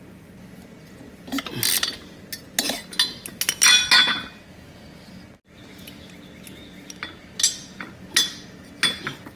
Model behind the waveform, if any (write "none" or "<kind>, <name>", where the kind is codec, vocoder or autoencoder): none